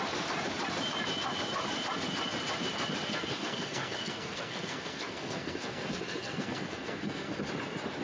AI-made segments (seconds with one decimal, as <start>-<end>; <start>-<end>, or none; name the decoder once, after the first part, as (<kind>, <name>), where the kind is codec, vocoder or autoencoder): 3.1-7.5 (codec, SNAC)